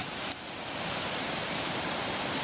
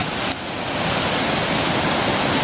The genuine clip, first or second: second